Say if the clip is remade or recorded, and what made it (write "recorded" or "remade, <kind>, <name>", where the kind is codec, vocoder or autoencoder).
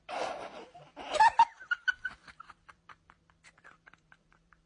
remade, vocoder, BigVGAN v2